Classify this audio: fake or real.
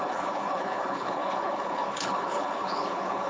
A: fake